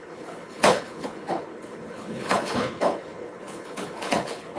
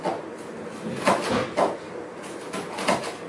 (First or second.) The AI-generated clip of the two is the first